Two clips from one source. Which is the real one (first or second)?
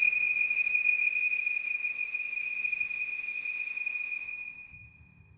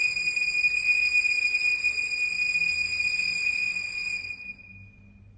second